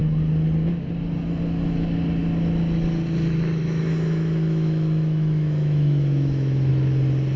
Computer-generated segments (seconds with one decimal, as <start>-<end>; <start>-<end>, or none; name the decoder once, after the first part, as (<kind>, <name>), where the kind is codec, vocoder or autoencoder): 3.6-6.7 (autoencoder, DAC-VAE)